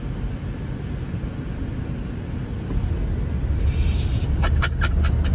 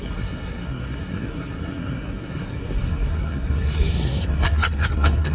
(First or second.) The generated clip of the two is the second